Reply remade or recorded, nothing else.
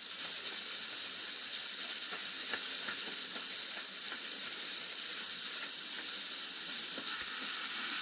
recorded